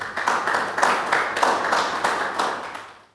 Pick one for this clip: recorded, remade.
recorded